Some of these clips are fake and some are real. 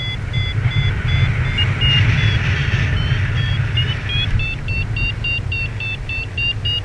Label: real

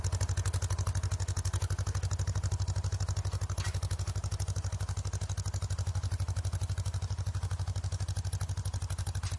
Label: real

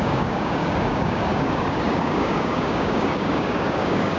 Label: fake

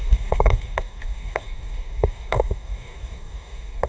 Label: fake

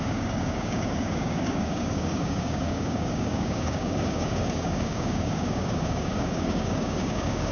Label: fake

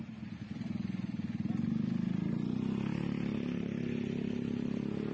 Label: real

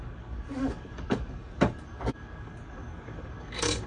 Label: fake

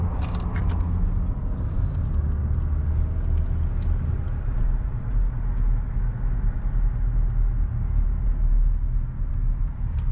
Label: real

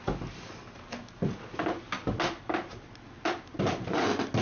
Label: real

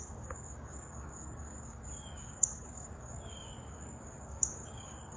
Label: fake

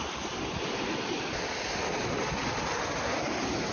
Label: real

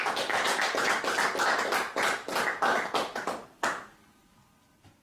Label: real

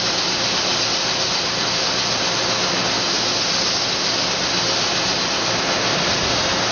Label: real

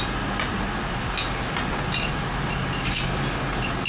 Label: real